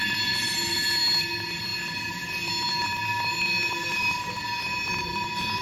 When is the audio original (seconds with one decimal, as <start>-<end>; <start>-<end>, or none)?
0.0-5.6